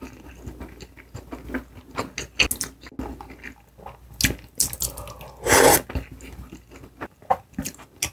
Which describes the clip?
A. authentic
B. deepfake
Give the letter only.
A